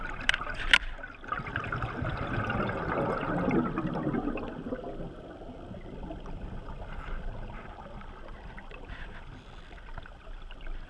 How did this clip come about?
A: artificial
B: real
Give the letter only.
B